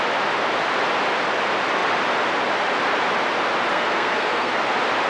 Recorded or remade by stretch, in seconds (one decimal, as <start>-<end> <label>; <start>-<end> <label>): 0.0-3.7 recorded; 3.7-4.5 remade; 4.5-5.1 recorded